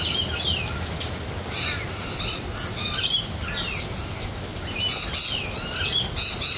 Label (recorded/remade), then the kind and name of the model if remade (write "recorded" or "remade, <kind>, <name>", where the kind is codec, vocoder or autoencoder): recorded